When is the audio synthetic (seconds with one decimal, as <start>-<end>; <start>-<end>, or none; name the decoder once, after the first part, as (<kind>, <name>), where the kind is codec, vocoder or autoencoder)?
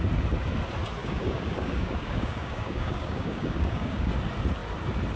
1.0-4.1 (codec, DAC)